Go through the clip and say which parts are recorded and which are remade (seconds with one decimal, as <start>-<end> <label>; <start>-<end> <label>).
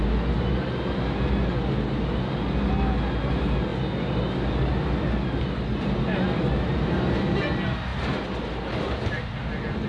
0.0-9.9 recorded